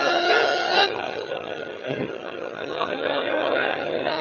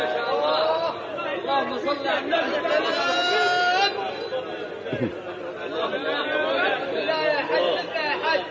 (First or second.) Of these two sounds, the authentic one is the second